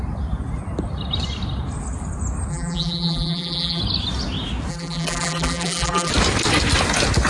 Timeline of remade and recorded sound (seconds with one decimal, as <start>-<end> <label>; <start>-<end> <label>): 0.0-2.5 recorded; 2.5-3.8 remade; 3.8-4.7 recorded; 4.7-6.1 remade; 6.1-7.3 recorded